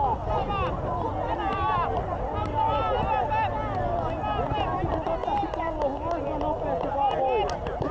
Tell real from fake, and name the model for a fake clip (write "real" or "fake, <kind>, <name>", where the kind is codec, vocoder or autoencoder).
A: real